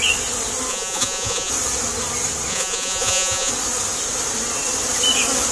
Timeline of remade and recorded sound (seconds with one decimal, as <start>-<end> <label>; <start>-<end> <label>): 0.0-0.7 recorded; 0.7-1.5 remade; 1.5-2.5 recorded; 2.5-3.5 remade; 3.5-5.5 recorded